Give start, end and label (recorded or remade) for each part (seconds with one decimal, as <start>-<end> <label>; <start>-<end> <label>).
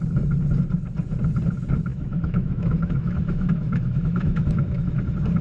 0.0-1.9 recorded; 1.9-5.0 remade; 5.0-5.4 recorded